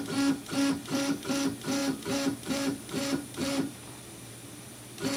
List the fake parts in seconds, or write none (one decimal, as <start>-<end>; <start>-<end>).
0.8-1.3; 1.8-4.7